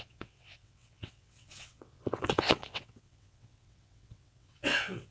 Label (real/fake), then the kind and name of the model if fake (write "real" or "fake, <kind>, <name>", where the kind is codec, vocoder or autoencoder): fake, vocoder, WaveNeXt